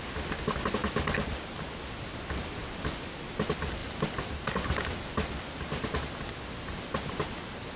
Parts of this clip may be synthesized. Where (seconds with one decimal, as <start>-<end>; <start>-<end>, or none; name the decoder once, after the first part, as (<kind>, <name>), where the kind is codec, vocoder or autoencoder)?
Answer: 0.8-3.2 (vocoder, BigVGAN v2); 3.8-4.8